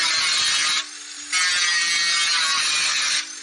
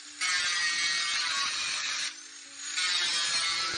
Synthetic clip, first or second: second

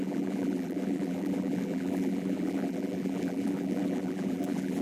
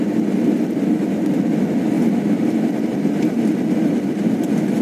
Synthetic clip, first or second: first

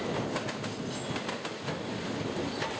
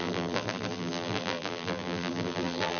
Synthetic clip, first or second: second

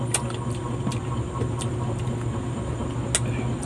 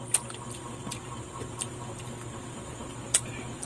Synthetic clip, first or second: second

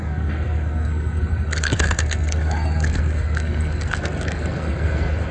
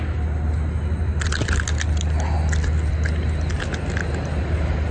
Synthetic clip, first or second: first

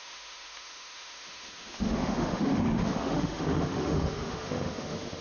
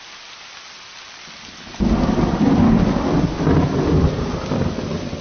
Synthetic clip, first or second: first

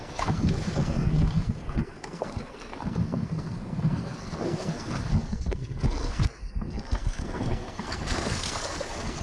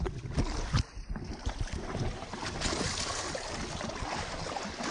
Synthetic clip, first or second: first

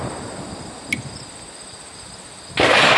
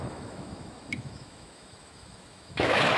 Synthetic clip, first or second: second